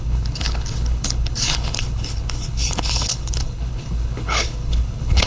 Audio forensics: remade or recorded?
remade